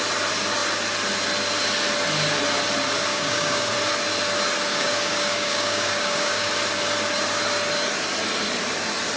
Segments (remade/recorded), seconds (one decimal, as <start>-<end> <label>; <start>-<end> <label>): 0.0-3.1 recorded; 3.1-3.7 remade; 3.7-4.7 recorded; 4.7-6.5 remade; 6.5-9.2 recorded